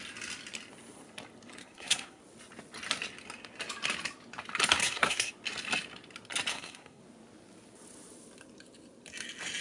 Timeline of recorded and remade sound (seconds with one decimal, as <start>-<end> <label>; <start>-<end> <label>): 0.0-1.6 recorded; 1.6-2.2 remade; 2.2-4.8 recorded; 4.8-5.3 remade; 5.3-6.5 recorded; 6.5-7.0 remade; 7.0-9.6 recorded